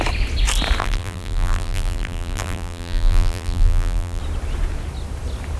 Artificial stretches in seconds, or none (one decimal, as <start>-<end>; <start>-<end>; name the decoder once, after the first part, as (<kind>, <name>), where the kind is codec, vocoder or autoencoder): 0.8-4.2 (vocoder, BigVGAN v2)